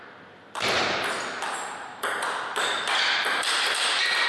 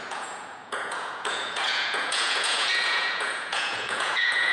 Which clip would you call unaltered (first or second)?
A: first